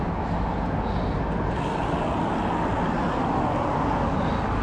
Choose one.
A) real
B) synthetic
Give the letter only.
A